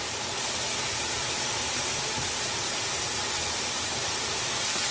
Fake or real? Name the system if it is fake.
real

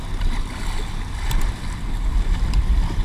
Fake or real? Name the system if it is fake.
real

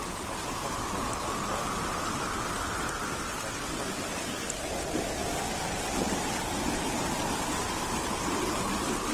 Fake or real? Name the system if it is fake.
real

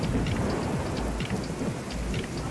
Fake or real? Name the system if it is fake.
real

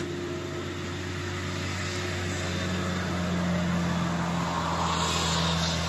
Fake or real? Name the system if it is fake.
real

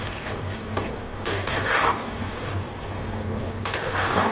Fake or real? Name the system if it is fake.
fake, codec, DAC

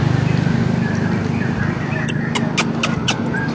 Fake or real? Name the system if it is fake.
real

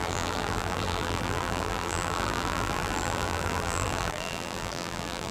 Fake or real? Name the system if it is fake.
fake, vocoder, BigVGAN v2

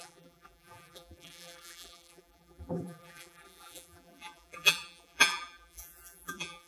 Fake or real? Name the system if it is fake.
fake, vocoder, BigVGAN v2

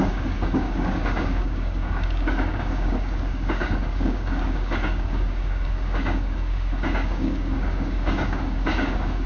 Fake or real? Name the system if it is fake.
fake, codec, DAC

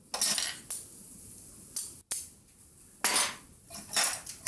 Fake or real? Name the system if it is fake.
real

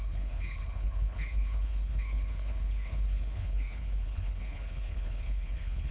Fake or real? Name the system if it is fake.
fake, codec, HILCodec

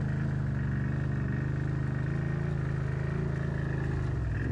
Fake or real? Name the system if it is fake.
real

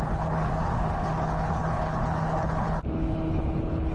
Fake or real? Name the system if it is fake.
fake, codec, HILCodec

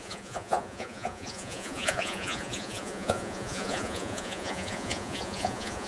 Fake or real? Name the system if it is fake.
fake, vocoder, Vocos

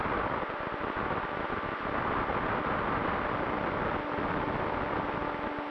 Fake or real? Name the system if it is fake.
real